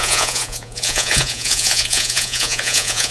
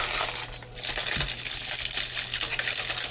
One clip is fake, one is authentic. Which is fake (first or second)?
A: first